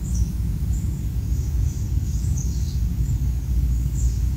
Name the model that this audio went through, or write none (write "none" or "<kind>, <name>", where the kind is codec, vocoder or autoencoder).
codec, DAC